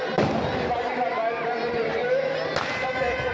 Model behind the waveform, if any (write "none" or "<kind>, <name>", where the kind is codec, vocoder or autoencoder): none